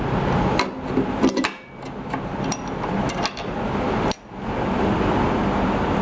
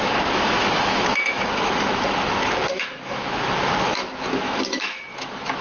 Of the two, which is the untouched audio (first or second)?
first